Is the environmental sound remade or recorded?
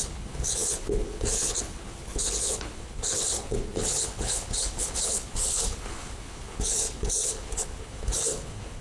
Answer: remade